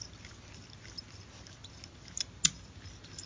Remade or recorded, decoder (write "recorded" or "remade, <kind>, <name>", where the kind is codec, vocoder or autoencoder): recorded